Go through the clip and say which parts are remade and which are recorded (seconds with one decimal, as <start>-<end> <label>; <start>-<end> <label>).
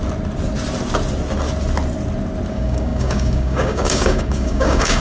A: 0.0-2.5 recorded; 2.5-5.0 remade